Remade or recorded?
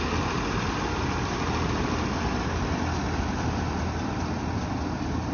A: recorded